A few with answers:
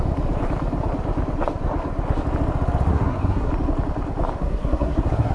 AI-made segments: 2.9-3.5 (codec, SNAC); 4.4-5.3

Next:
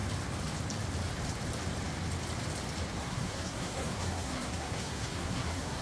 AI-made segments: 3.0-5.8 (codec, SNAC)

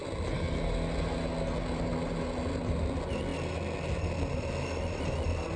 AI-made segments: none

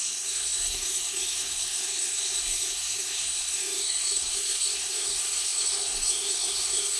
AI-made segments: 0.0-7.0 (codec, SNAC)

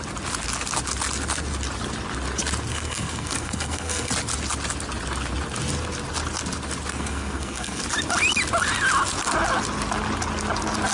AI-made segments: 2.7-4.1 (codec, SNAC); 6.9-7.8

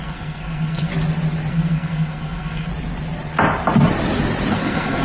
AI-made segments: 0.0-0.9 (codec, SNAC); 1.5-2.7; 4.5-5.0

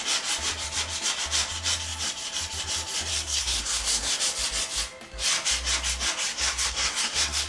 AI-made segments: 3.1-4.2 (codec, SNAC); 6.3-7.5

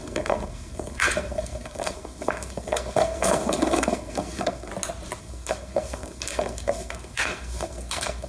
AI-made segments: 0.0-4.7 (codec, SNAC); 5.2-8.3